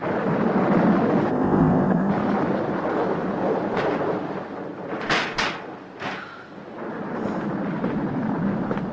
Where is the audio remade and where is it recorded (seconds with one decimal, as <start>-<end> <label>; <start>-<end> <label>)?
0.0-1.3 recorded; 1.3-2.1 remade; 2.1-8.9 recorded

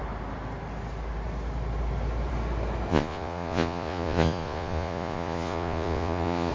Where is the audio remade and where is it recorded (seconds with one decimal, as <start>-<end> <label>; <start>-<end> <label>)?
0.0-2.9 recorded; 2.9-6.5 remade

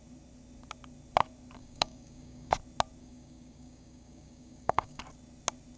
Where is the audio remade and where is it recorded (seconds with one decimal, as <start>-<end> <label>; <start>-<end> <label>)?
0.0-1.6 recorded; 1.6-2.5 remade; 2.5-3.0 recorded; 3.0-5.0 remade; 5.0-5.8 recorded

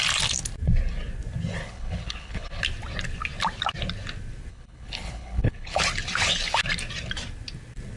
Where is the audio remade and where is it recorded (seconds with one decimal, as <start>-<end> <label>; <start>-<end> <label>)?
0.0-1.6 recorded; 1.6-2.6 remade; 2.6-4.5 recorded; 4.5-5.8 remade; 5.8-8.0 recorded

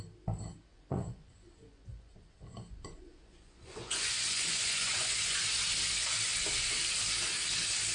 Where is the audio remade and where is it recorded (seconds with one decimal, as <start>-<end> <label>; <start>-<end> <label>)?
0.0-0.7 recorded; 0.7-5.4 remade; 5.4-7.9 recorded

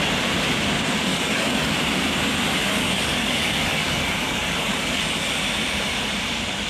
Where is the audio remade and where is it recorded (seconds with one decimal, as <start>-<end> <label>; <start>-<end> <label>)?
0.0-1.1 recorded; 1.1-1.7 remade; 1.7-2.6 recorded; 2.6-5.3 remade; 5.3-6.7 recorded

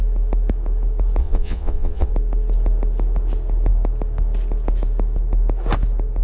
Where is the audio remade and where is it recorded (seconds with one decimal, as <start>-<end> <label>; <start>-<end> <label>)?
0.0-1.2 recorded; 1.2-2.1 remade; 2.1-6.2 recorded

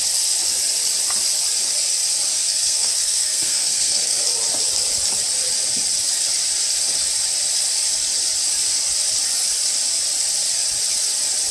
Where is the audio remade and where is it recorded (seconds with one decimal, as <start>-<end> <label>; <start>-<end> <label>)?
0.0-2.3 recorded; 2.3-4.2 remade; 4.2-11.5 recorded